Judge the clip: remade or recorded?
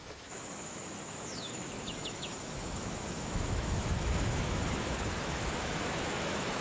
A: remade